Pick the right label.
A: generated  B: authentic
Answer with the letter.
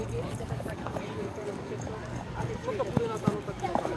A